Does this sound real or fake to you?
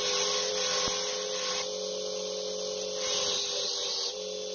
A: real